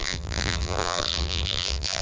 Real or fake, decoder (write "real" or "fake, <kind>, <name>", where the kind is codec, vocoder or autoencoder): fake, vocoder, BigVGAN v2